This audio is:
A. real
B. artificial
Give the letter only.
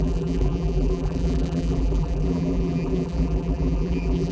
B